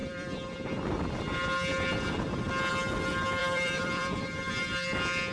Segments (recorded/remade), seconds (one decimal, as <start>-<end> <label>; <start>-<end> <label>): 0.0-0.8 remade; 0.8-3.4 recorded; 3.4-4.5 remade; 4.5-5.3 recorded